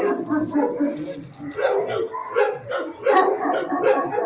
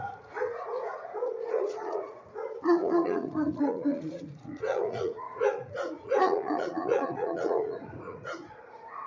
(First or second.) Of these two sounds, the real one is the first